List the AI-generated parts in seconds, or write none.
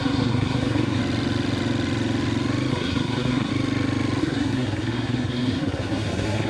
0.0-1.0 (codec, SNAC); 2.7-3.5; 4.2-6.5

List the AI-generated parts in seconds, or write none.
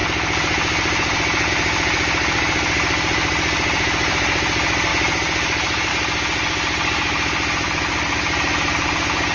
none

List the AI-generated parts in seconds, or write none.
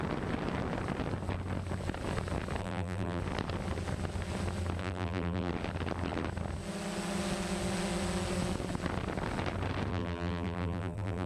2.6-3.2 (vocoder, BigVGAN v2); 4.8-5.5; 9.9-11.3